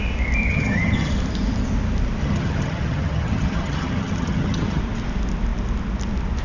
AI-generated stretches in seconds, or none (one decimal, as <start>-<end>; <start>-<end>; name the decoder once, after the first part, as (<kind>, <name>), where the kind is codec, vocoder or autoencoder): 0.5-1.1 (vocoder, HiFi-GAN); 2.2-4.8